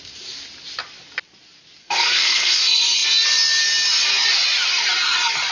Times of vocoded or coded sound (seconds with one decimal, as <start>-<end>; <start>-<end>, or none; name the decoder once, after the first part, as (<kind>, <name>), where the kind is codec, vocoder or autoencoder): 1.8-2.6 (codec, SNAC)